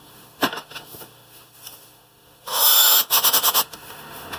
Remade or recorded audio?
remade